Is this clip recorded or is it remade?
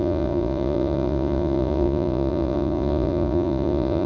remade